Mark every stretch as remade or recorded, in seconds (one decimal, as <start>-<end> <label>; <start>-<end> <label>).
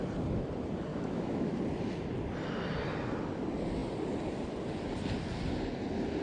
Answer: 0.0-0.9 recorded; 0.9-1.6 remade; 1.6-6.2 recorded